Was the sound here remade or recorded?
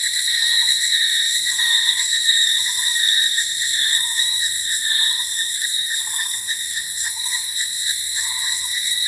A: remade